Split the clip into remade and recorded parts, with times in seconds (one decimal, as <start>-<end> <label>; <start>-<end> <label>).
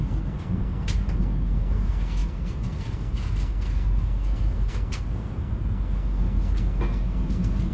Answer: 0.0-7.7 remade